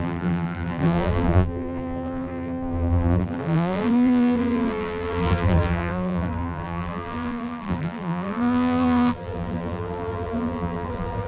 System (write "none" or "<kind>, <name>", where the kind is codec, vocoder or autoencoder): vocoder, BigVGAN v2